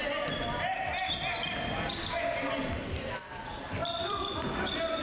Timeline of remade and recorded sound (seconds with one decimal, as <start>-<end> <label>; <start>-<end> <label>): 0.0-3.8 recorded; 3.8-5.0 remade